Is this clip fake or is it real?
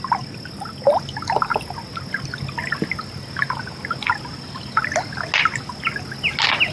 real